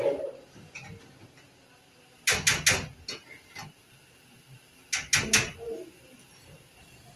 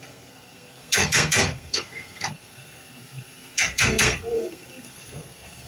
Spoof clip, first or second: second